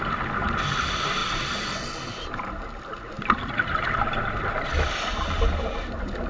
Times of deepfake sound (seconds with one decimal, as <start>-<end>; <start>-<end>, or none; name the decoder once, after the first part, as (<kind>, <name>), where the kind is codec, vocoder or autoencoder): none